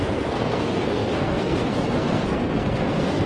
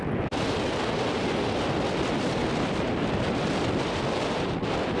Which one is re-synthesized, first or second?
first